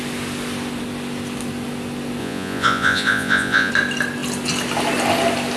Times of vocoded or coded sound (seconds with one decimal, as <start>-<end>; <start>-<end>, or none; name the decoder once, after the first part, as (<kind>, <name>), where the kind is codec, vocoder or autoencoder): 2.2-3.7 (vocoder, Vocos)